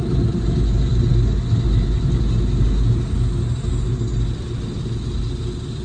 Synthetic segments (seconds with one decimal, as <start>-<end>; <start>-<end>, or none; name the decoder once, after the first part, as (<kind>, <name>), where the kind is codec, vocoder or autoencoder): none

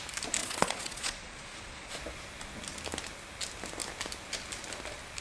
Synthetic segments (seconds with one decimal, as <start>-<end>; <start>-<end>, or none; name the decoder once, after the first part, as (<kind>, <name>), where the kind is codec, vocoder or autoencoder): 0.4-1.9 (vocoder, Vocos)

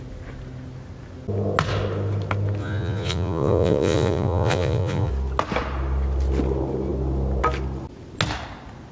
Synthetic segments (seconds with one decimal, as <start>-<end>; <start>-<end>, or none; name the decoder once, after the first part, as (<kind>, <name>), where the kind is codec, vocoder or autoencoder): 2.6-5.1 (vocoder, Vocos)

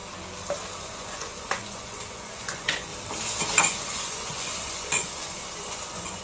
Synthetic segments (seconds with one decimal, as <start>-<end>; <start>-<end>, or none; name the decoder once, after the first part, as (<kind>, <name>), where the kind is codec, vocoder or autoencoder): 0.8-2.9 (vocoder, Vocos); 3.6-6.2

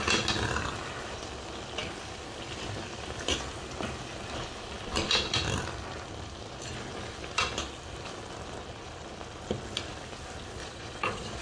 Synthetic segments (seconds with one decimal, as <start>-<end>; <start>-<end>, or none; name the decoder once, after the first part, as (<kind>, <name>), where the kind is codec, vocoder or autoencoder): 10.6-11.4 (vocoder, Vocos)